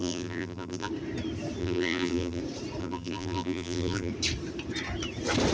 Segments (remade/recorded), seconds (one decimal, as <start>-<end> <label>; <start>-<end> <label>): 0.0-0.9 remade; 0.9-1.6 recorded; 1.6-2.4 remade; 2.4-2.8 recorded; 2.8-4.1 remade; 4.1-5.5 recorded